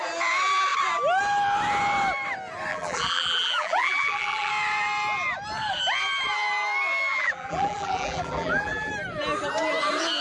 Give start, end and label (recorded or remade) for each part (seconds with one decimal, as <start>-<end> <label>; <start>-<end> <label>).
0.0-2.7 recorded; 2.7-4.5 remade; 4.5-7.1 recorded; 7.1-8.9 remade; 8.9-10.2 recorded